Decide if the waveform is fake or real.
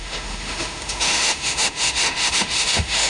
fake